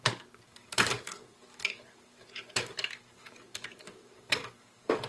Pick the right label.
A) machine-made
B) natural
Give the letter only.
A